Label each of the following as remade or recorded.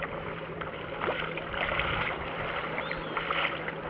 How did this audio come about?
recorded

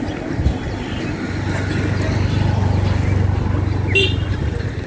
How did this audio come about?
recorded